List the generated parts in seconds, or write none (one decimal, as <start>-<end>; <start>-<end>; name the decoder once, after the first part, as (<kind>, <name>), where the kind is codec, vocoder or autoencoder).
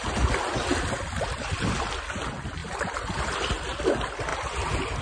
none